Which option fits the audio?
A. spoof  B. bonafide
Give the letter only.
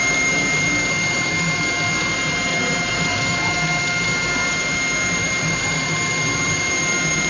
A